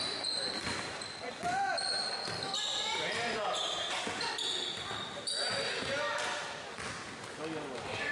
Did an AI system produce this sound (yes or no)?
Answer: no